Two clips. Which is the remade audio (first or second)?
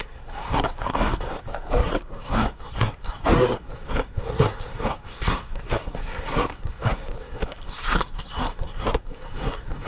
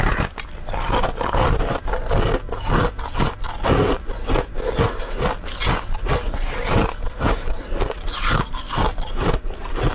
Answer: first